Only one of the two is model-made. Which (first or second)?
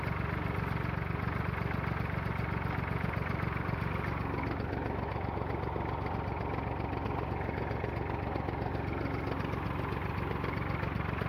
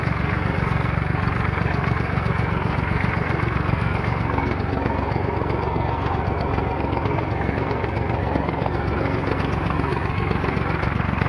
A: second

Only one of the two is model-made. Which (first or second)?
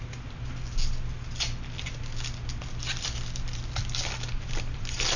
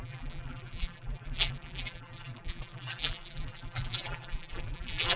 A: second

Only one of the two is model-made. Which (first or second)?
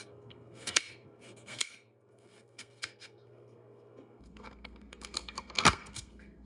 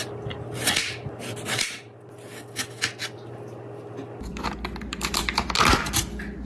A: first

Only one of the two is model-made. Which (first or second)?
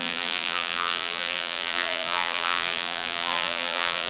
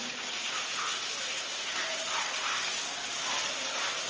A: first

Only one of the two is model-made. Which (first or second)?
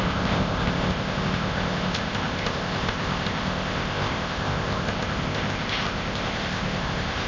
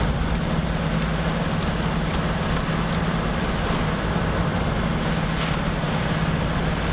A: first